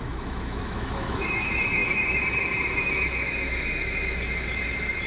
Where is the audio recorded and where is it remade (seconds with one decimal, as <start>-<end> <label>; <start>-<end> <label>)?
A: 0.0-5.1 remade